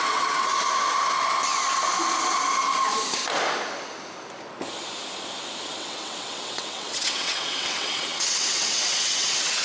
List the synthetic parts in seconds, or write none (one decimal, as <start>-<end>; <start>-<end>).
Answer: 0.0-0.5; 5.6-9.6